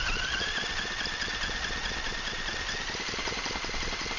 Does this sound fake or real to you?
real